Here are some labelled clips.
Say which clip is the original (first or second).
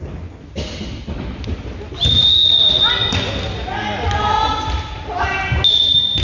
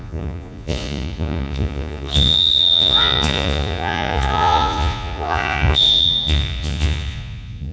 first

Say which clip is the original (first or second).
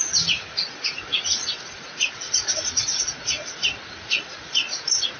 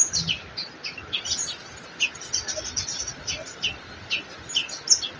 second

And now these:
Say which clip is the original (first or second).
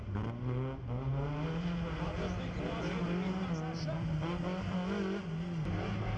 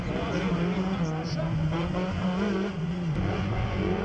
first